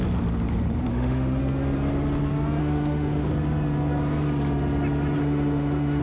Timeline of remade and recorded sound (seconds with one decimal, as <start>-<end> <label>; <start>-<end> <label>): 0.0-0.9 recorded; 0.9-1.4 remade; 1.4-2.6 recorded; 2.6-3.3 remade; 3.3-5.2 recorded; 5.2-6.0 remade